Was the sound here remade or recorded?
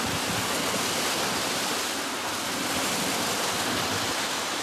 recorded